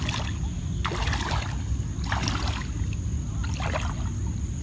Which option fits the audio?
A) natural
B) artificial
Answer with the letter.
A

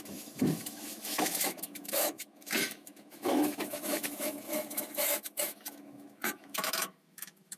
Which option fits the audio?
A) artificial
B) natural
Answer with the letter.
A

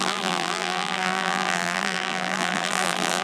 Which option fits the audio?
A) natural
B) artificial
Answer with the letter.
B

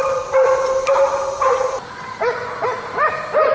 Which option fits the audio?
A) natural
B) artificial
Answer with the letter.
A